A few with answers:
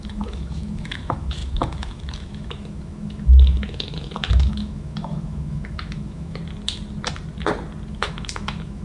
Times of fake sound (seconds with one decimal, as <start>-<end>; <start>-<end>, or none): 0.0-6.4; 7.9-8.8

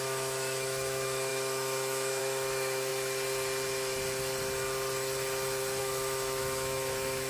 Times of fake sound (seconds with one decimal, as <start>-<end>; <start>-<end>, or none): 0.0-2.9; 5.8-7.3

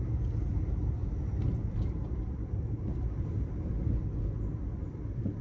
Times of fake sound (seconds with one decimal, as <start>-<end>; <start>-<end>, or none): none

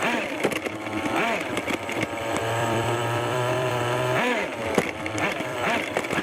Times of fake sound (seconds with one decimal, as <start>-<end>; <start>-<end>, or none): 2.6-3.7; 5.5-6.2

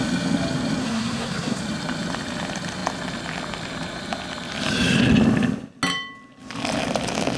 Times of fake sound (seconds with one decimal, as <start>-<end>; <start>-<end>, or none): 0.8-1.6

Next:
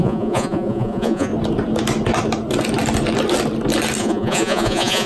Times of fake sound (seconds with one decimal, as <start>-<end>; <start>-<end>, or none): 0.0-1.3; 4.0-5.1

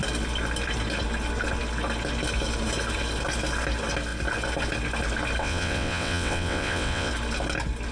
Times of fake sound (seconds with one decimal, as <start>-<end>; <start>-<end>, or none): 5.4-7.1